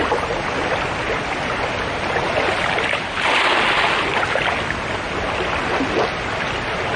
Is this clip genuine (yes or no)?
yes